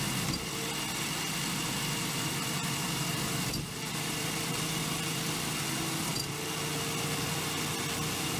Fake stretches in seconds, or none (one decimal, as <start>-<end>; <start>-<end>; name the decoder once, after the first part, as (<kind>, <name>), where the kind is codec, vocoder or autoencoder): 2.3-5.4 (vocoder, BigVGAN v2)